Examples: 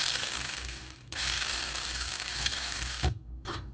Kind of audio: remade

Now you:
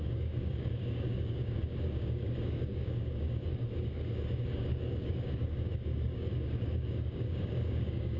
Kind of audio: remade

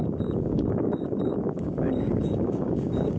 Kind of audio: remade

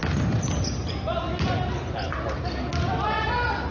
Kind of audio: recorded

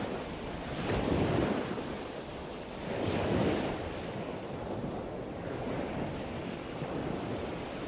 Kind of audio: recorded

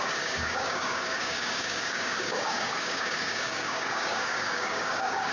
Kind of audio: remade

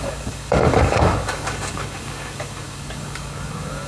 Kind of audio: remade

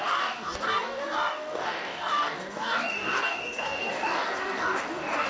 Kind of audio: remade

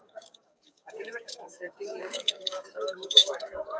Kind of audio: remade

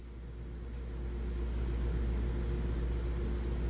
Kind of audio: recorded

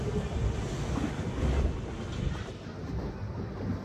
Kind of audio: recorded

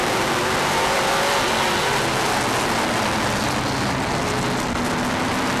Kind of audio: recorded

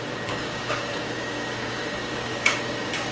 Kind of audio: remade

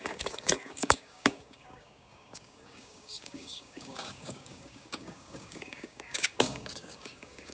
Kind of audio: remade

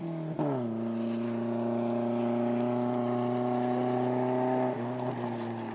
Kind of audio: recorded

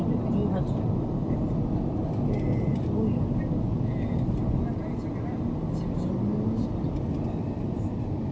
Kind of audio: recorded